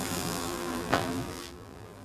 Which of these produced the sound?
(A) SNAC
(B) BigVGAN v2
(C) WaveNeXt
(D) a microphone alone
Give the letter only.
B